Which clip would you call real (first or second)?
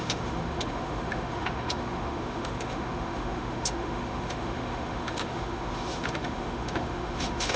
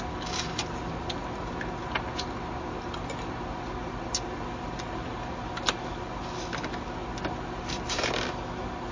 second